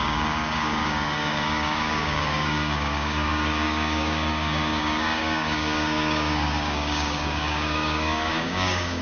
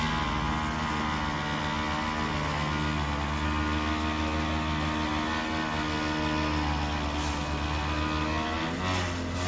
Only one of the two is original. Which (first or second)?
second